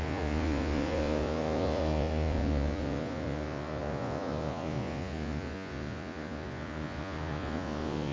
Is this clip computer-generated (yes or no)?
yes